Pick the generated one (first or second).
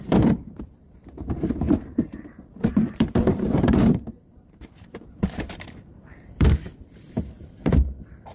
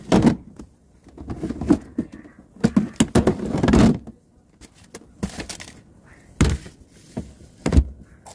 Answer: first